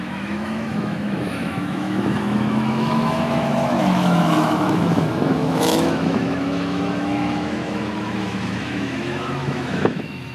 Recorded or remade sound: remade